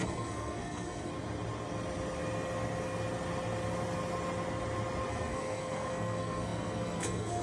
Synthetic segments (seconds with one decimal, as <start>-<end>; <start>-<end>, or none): 0.0-1.1; 5.1-7.4